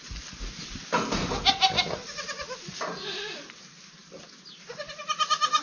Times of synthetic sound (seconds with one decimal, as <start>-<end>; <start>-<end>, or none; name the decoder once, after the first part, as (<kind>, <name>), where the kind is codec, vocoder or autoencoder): none